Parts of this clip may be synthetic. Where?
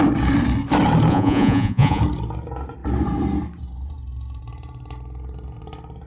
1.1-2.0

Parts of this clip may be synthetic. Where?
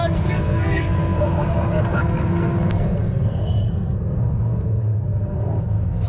0.0-6.1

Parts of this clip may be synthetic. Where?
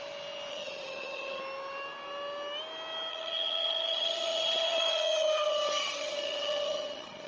0.5-1.4; 3.1-7.3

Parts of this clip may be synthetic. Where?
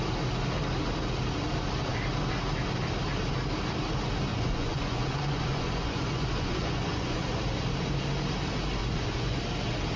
4.3-7.4; 8.8-9.4